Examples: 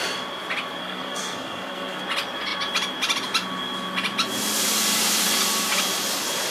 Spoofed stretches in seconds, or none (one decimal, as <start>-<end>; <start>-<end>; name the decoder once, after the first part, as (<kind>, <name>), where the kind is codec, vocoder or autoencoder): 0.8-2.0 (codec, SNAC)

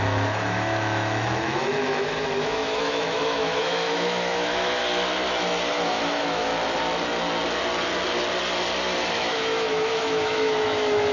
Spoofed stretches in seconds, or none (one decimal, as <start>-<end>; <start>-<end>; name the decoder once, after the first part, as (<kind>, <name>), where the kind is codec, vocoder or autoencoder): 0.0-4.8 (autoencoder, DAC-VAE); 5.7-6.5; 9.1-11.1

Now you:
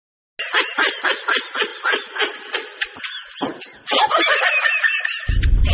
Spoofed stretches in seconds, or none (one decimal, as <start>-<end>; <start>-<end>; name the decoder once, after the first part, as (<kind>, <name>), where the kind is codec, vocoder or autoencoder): none

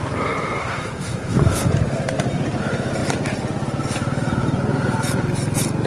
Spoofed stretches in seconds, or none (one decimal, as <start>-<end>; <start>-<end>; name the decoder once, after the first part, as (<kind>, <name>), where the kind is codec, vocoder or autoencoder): 0.6-1.7 (codec, SNAC)